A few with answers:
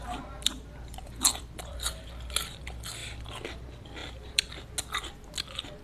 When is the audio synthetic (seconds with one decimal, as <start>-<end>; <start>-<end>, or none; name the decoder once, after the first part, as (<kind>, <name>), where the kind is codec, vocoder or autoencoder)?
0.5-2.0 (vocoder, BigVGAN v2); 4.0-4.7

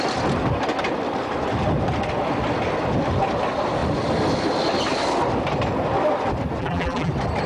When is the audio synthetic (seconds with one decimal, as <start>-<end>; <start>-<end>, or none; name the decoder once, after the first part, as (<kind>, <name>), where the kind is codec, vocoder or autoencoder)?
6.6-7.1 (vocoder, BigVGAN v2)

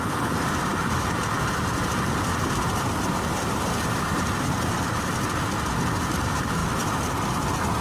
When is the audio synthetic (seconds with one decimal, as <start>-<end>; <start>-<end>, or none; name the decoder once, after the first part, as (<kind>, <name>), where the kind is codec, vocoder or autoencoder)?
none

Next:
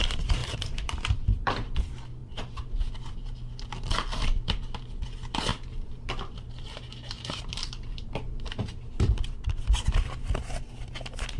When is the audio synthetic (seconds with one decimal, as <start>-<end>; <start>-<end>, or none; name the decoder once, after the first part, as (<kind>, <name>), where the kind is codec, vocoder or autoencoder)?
0.4-1.8 (vocoder, BigVGAN v2); 2.2-2.9; 5.5-10.3

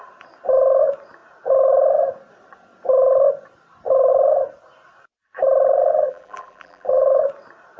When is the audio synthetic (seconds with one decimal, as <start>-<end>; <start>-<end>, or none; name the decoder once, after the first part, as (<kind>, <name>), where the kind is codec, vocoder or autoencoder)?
5.8-7.2 (vocoder, BigVGAN v2)

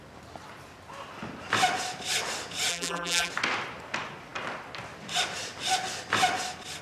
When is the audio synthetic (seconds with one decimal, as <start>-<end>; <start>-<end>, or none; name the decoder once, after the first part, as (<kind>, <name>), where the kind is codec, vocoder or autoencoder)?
2.7-3.3 (vocoder, BigVGAN v2)